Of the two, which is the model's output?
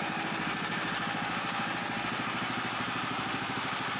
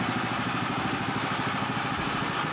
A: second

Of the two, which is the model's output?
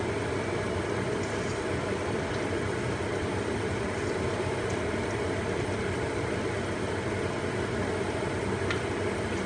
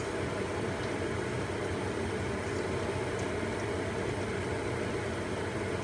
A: first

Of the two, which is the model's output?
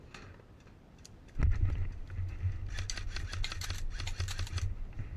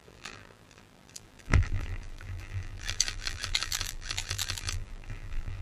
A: second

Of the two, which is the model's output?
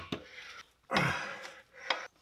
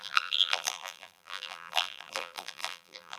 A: second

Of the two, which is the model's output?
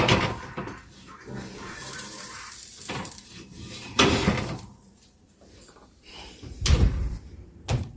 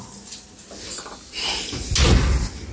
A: first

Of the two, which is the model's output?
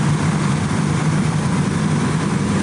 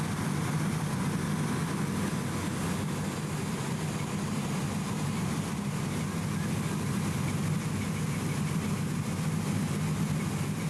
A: first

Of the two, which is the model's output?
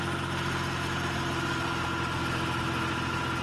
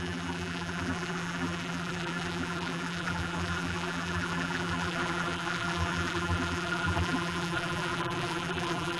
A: second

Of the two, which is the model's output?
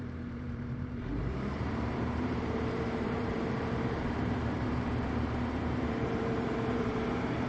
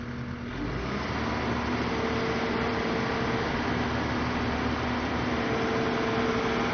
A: first